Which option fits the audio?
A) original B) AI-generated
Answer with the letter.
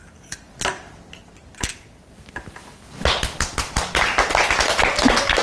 A